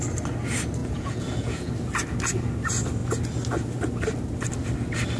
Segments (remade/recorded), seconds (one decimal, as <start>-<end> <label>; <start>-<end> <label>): 0.0-0.8 recorded; 0.8-1.7 remade; 1.7-5.2 recorded